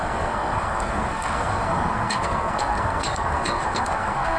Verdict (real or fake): fake